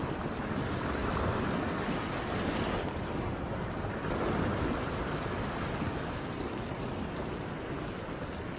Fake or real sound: real